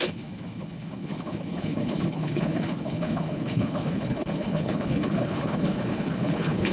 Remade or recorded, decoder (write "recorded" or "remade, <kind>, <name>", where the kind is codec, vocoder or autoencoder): remade, codec, HILCodec